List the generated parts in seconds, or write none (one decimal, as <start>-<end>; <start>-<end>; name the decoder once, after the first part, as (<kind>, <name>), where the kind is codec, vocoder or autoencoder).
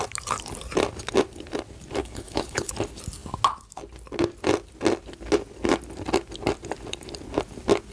2.0-2.7 (codec, HILCodec)